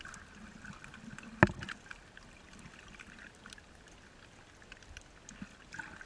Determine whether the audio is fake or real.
real